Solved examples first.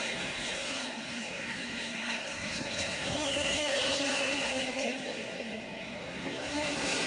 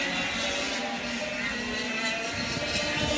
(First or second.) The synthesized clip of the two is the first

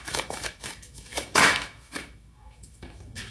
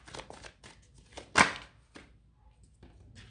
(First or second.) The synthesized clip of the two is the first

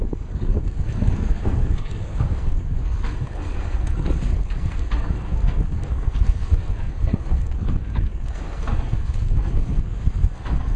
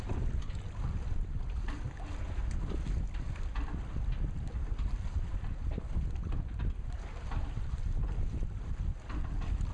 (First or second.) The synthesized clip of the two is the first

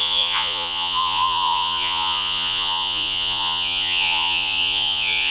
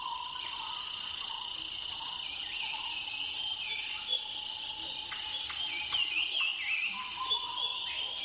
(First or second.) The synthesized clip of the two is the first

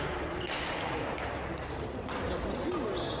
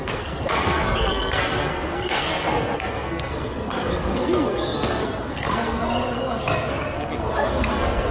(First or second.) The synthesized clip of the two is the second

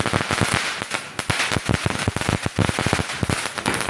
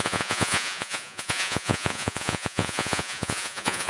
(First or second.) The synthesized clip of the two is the second